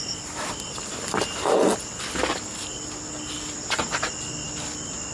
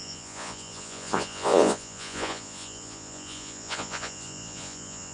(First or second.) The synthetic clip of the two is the second